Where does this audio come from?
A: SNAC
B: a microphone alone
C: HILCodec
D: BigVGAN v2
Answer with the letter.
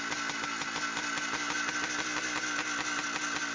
B